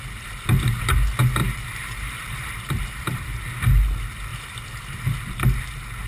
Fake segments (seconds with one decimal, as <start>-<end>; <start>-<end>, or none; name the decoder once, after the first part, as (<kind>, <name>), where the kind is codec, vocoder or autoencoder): 1.2-3.4 (vocoder, BigVGAN v2)

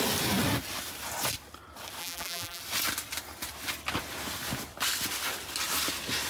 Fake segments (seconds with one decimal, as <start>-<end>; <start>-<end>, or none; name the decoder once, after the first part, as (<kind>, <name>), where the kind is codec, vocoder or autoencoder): 2.0-2.6 (vocoder, BigVGAN v2)

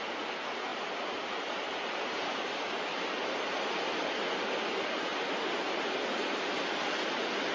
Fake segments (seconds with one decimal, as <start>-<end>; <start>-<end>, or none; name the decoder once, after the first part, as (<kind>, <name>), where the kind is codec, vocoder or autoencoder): 0.7-3.7 (vocoder, BigVGAN v2)

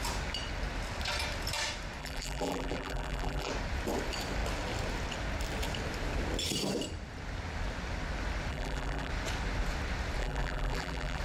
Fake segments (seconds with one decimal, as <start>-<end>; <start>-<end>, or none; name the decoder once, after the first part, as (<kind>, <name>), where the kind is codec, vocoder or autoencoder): 2.0-3.5 (vocoder, BigVGAN v2); 8.5-9.1; 10.2-11.2

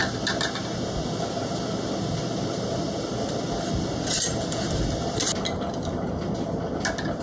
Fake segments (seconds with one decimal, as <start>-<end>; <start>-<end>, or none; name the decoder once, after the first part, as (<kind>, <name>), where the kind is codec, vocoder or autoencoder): none